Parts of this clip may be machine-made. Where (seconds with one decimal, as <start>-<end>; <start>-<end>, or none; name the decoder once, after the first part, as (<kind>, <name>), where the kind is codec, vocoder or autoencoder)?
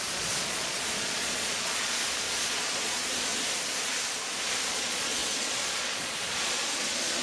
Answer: 0.0-3.3 (vocoder, Vocos); 4.7-7.2